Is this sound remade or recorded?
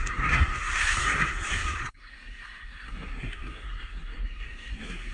remade